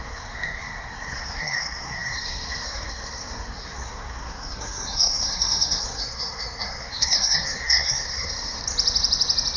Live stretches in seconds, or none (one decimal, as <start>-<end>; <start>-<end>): 8.6-9.6